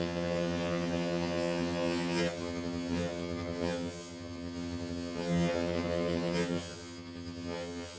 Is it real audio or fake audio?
fake